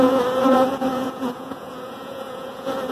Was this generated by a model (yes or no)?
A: yes